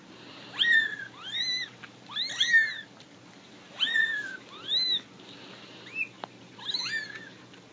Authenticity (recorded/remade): recorded